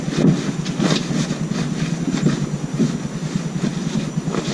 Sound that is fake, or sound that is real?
real